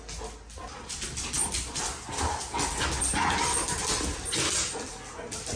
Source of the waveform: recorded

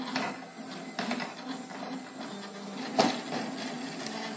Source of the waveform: recorded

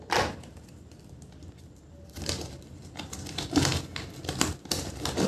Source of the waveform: remade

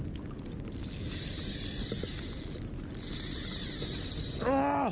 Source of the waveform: recorded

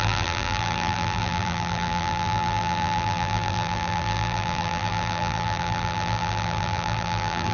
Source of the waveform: remade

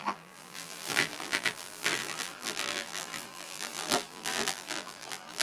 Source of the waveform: remade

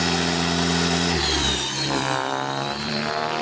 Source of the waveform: remade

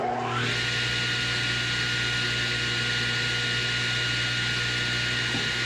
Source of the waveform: recorded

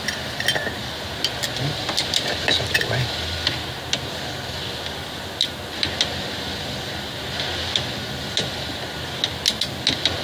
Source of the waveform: recorded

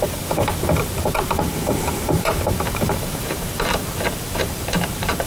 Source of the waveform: remade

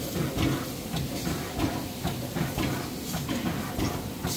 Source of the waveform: recorded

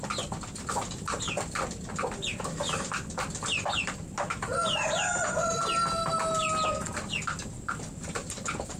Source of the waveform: recorded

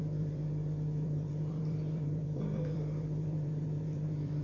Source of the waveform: remade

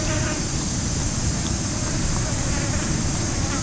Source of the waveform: remade